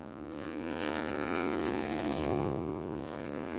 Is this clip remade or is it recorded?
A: remade